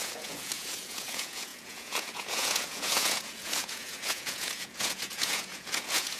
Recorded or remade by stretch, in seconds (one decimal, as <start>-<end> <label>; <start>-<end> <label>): 0.0-6.2 remade